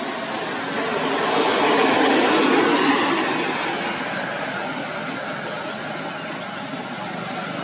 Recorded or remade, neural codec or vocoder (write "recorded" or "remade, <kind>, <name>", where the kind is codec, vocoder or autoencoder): recorded